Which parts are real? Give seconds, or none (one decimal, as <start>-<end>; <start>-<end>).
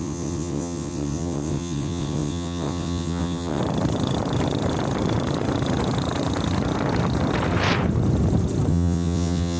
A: 3.6-8.7